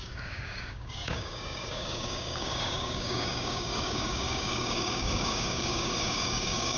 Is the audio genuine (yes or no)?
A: no